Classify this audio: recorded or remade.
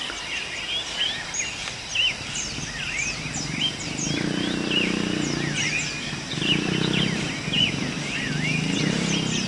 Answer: recorded